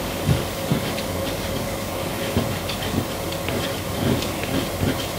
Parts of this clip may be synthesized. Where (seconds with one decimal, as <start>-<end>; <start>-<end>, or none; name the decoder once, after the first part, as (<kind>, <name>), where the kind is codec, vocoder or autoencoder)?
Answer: 0.0-4.5 (codec, DAC)